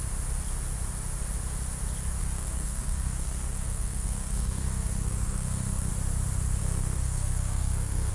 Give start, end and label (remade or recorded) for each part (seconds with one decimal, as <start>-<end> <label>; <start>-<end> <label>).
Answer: 0.0-2.2 recorded; 2.2-5.9 remade; 5.9-6.6 recorded; 6.6-8.1 remade